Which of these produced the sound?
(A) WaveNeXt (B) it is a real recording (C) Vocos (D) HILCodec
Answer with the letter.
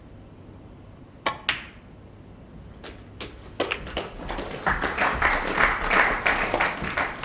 B